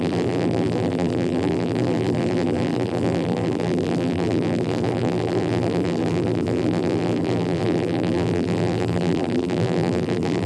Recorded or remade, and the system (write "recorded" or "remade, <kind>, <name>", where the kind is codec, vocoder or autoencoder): remade, vocoder, BigVGAN v2